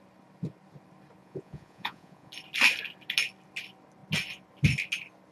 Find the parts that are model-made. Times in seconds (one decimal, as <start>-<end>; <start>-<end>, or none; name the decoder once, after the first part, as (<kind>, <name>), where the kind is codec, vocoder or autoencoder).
1.2-2.3 (vocoder, Vocos)